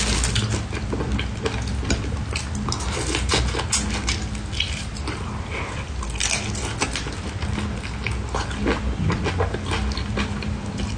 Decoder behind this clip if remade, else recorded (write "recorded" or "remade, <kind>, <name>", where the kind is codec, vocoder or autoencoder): recorded